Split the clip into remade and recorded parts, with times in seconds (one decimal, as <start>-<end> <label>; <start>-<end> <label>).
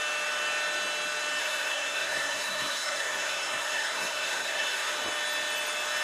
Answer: 0.0-1.4 recorded; 1.4-4.9 remade; 4.9-6.0 recorded